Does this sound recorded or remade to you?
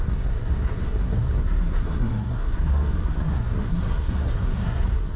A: remade